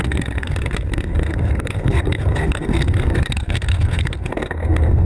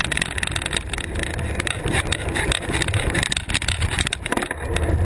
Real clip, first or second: second